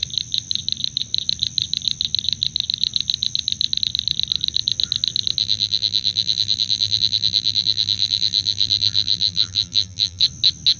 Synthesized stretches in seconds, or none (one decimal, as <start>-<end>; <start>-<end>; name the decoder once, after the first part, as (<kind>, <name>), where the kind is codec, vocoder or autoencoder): 5.4-10.2 (vocoder, BigVGAN v2)